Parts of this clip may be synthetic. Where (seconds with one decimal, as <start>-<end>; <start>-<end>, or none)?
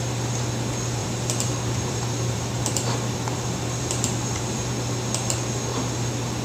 1.0-4.7